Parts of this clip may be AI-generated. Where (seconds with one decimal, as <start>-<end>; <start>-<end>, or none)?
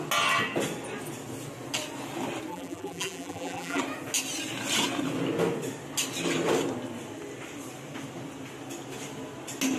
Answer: 2.5-3.8